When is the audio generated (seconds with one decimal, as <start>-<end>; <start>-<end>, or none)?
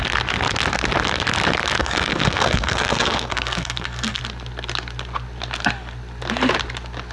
1.8-4.2